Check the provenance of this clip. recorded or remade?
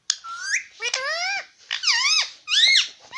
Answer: recorded